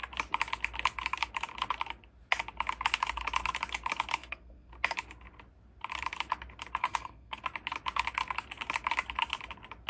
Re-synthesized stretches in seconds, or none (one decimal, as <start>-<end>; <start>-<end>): 4.2-4.7; 6.8-7.4